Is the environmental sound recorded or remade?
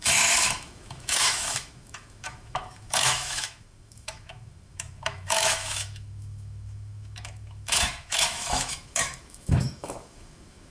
remade